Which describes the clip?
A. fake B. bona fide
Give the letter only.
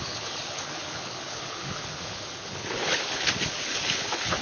A